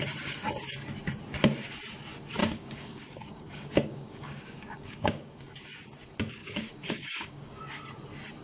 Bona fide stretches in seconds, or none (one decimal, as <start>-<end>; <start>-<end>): 0.0-2.4; 5.5-6.4; 7.6-8.4